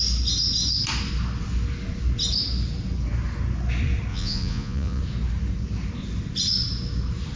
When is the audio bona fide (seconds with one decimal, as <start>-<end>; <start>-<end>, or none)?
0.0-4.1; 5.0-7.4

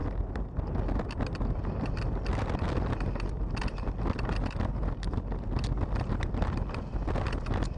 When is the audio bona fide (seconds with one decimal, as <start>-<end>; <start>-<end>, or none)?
0.0-7.8

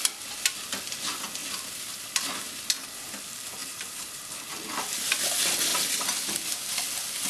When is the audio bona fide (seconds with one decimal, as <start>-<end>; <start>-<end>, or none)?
0.0-1.4; 2.2-3.6; 4.2-7.3

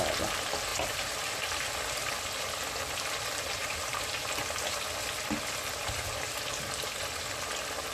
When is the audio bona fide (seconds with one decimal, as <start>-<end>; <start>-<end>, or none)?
0.0-0.7; 1.7-3.6; 4.4-7.9

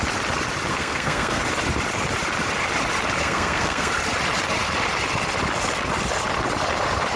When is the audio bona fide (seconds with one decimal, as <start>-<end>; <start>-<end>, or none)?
0.0-0.7; 1.4-3.2; 3.9-7.2